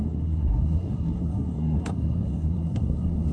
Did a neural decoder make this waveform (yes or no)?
yes